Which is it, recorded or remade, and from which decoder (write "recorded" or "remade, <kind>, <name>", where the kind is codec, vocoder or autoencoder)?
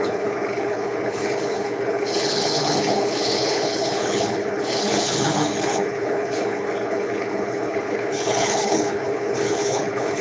remade, codec, HILCodec